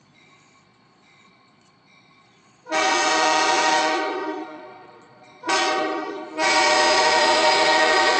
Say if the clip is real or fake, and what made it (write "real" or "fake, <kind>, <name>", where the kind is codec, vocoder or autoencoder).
fake, vocoder, Vocos